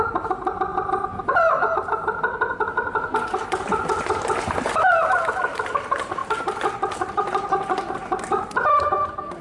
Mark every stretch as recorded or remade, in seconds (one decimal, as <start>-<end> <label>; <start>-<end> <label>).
0.0-9.4 recorded